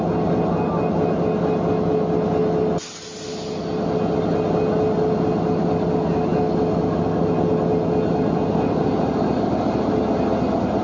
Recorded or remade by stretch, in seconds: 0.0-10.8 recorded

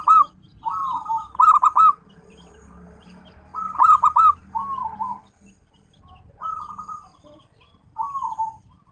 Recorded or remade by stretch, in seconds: 0.0-8.9 remade

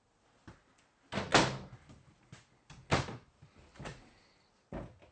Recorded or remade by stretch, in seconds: 0.0-5.1 recorded

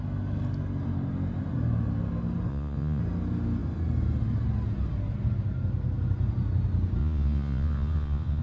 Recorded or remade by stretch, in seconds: 0.0-2.5 recorded; 2.5-3.0 remade; 3.0-7.0 recorded; 7.0-8.4 remade